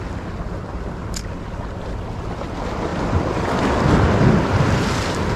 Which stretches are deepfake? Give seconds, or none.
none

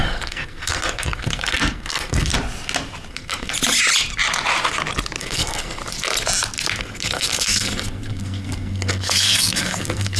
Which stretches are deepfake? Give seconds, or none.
0.0-2.3 (codec, SNAC); 3.1-3.5; 5.2-5.8; 6.8-10.2

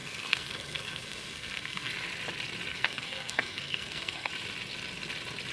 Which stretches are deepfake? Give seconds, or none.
0.0-1.9 (codec, SNAC); 2.7-4.3

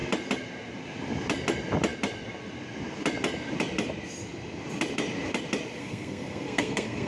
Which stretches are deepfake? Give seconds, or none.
5.8-7.1 (codec, SNAC)

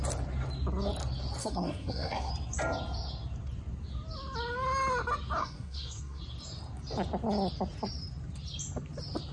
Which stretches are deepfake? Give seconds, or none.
1.4-2.3 (codec, SNAC); 5.4-6.2

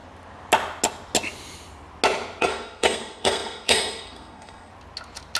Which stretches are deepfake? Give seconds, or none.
2.4-4.7 (codec, SNAC)

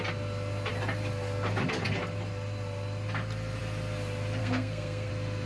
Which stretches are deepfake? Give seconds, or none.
4.4-5.1 (codec, SNAC)

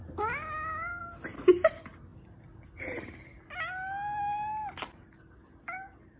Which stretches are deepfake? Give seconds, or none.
none